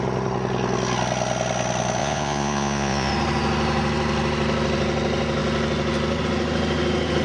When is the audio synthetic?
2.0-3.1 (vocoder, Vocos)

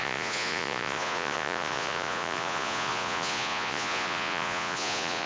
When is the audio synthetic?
0.0-5.3 (vocoder, Vocos)

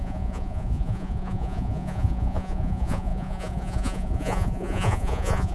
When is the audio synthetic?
0.0-5.5 (vocoder, Vocos)

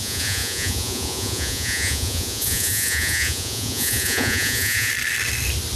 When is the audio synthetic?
0.0-4.9 (vocoder, Vocos)

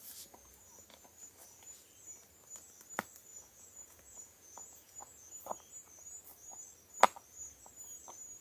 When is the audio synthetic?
3.3-5.3 (vocoder, Vocos)

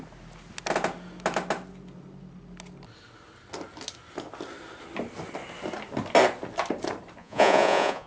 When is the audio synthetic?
7.2-8.1 (vocoder, Vocos)

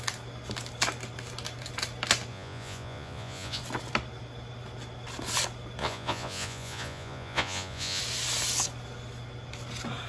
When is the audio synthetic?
2.3-3.6 (vocoder, Vocos); 5.8-8.0

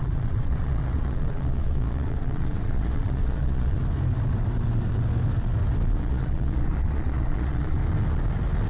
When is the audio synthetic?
0.0-3.8 (vocoder, Vocos); 6.0-7.8